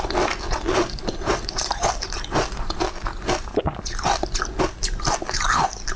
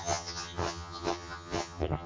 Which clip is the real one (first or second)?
first